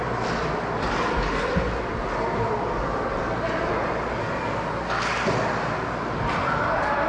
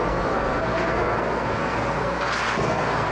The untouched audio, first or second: first